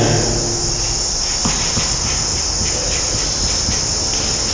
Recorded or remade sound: recorded